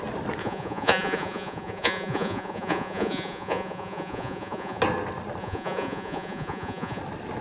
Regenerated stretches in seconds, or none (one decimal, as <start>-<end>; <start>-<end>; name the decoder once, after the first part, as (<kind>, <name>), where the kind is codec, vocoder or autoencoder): 0.4-4.8 (vocoder, Vocos); 5.4-7.0